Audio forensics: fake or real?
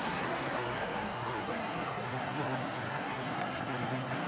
fake